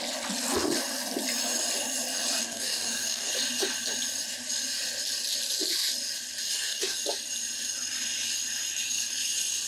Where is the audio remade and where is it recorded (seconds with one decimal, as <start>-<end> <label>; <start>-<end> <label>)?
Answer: 0.0-2.4 recorded; 2.4-3.3 remade; 3.3-6.4 recorded; 6.4-7.0 remade; 7.0-9.7 recorded